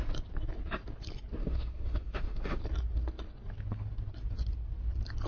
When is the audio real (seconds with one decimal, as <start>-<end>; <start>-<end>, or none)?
0.0-1.4; 2.6-5.3